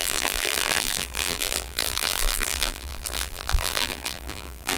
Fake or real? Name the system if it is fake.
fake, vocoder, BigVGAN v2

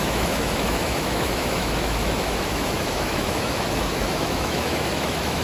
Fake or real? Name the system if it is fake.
fake, autoencoder, DAC-VAE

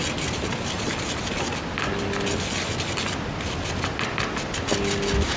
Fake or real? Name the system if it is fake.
real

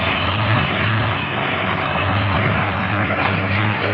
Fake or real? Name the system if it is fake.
fake, codec, SNAC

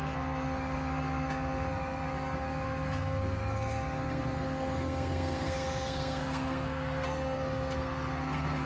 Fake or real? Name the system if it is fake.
fake, codec, SNAC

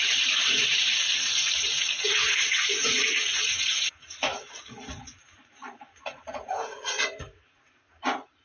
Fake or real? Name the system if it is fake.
fake, vocoder, Vocos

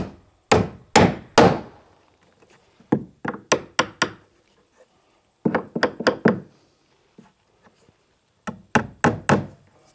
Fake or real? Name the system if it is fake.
real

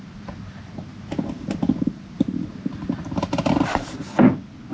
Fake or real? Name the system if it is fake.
real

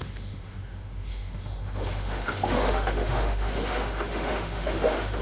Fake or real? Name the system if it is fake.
fake, autoencoder, DAC-VAE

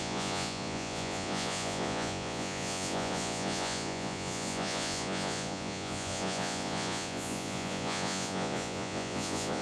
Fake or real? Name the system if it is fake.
fake, vocoder, Vocos